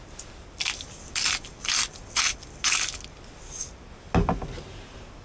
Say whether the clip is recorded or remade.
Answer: recorded